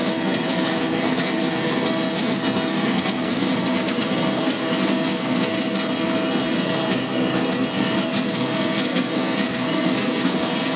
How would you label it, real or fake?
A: fake